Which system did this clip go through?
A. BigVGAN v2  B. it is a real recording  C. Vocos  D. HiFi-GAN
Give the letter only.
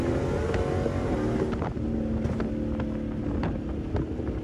B